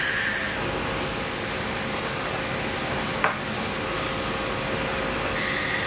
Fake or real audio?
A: real